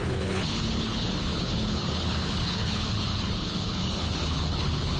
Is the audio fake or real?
fake